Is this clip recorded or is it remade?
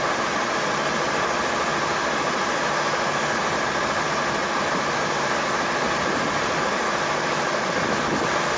recorded